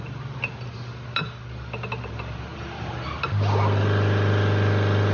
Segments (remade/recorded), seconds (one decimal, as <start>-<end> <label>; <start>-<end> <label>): 0.0-5.1 recorded